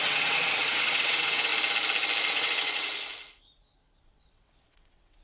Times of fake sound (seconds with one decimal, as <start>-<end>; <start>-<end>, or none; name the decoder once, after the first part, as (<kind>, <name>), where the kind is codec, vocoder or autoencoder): 0.0-1.5 (vocoder, WaveNeXt); 2.3-2.9; 4.0-5.2